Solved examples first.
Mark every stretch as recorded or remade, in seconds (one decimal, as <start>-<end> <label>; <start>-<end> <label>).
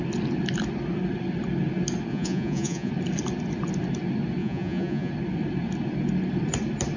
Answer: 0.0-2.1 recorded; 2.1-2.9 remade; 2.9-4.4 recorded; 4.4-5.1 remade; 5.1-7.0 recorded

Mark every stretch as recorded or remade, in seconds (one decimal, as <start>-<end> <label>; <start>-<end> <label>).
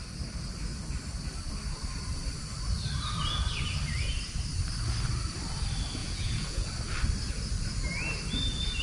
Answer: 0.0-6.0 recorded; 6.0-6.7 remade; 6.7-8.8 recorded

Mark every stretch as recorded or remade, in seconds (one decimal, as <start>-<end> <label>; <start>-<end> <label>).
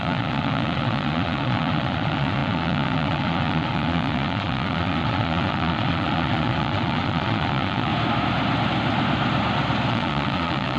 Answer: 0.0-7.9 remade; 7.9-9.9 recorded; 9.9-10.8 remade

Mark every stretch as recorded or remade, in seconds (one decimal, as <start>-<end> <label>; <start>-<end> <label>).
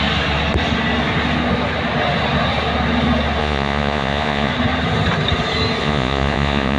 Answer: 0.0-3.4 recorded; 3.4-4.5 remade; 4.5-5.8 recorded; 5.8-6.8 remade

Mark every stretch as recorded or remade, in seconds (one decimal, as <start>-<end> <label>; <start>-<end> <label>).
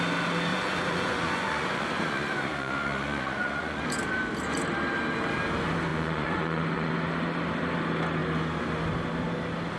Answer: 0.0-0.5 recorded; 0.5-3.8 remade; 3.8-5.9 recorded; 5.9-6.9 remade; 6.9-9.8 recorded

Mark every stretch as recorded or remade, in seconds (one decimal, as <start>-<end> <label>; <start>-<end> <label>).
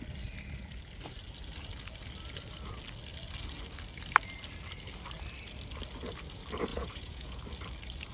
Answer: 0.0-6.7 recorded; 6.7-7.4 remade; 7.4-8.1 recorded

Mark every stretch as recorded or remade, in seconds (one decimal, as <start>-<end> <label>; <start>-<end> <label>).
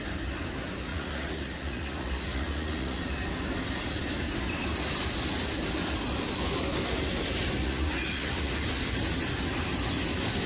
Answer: 0.0-0.9 recorded; 0.9-3.0 remade; 3.0-7.6 recorded; 7.6-8.5 remade; 8.5-10.5 recorded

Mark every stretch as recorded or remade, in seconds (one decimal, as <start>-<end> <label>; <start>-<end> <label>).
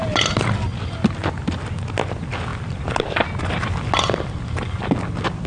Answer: 0.0-5.5 recorded